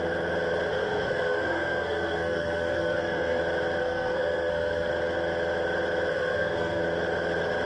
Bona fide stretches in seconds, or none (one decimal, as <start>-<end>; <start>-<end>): 0.0-0.7; 3.4-3.8; 4.9-6.1; 6.8-7.7